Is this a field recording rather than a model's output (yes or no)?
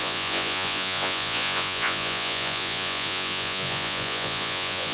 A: no